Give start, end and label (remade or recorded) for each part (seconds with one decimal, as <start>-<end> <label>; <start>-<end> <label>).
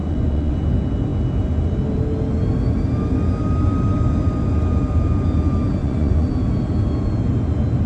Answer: 0.0-0.5 remade; 0.5-5.8 recorded; 5.8-6.3 remade; 6.3-7.9 recorded